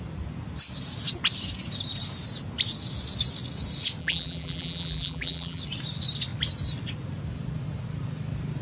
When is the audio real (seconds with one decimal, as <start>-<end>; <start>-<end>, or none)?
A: 0.0-4.0; 5.6-8.6